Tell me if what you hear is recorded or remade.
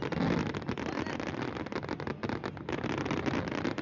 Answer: recorded